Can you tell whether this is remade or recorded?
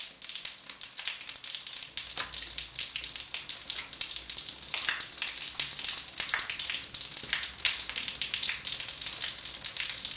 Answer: recorded